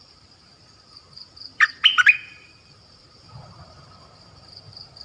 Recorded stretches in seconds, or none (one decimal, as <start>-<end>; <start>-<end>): 0.5-2.3